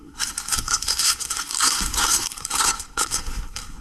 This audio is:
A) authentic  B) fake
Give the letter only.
B